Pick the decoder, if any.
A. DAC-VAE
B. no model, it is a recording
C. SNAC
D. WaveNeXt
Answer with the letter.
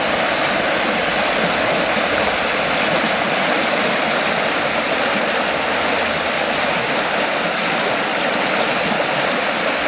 B